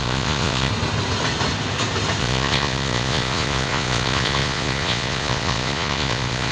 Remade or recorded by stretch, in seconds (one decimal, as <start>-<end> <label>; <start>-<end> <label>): 0.0-0.7 remade; 0.7-2.2 recorded; 2.2-6.5 remade